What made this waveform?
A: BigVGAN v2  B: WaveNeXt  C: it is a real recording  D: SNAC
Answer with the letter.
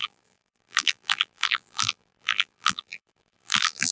A